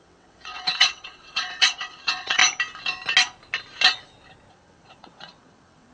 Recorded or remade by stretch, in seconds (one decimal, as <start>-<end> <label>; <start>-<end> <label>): 0.0-2.4 remade; 2.4-4.5 recorded; 4.5-5.9 remade